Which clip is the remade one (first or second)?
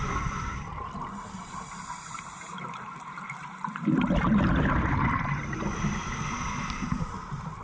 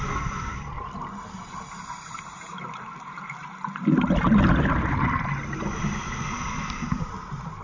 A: first